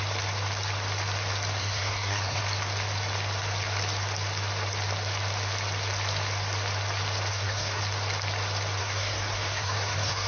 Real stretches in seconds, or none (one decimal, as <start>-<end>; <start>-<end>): 0.0-1.6; 2.4-7.3; 7.8-8.8